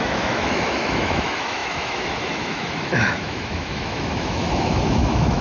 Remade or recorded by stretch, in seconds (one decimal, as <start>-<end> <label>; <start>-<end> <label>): 0.0-5.4 remade